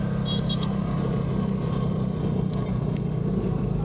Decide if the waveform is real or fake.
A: real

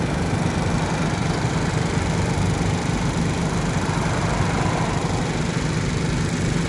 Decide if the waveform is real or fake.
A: real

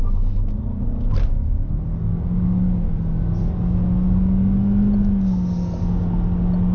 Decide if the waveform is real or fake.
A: real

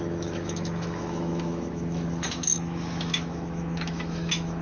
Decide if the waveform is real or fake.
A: fake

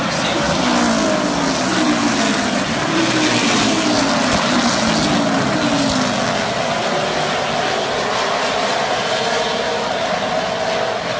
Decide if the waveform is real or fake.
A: real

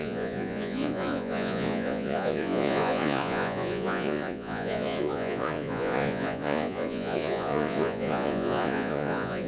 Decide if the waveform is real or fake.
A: fake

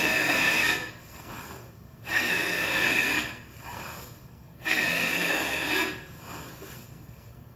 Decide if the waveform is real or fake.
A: fake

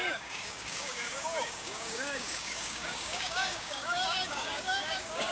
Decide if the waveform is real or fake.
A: fake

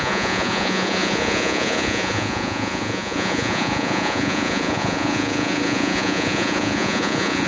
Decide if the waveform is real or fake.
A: fake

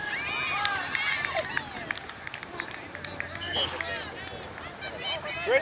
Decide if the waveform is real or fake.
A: real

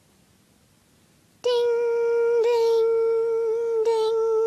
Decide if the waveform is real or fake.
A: real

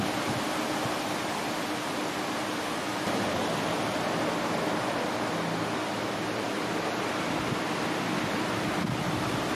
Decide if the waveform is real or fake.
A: real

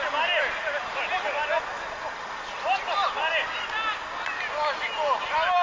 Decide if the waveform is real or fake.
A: real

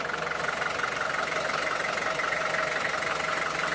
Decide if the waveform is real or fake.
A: real